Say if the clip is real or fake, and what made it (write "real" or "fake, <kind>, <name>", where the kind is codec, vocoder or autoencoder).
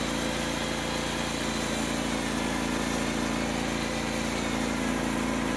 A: real